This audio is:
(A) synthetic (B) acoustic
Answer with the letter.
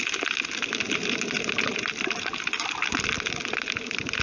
B